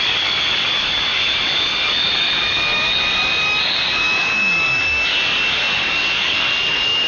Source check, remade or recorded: remade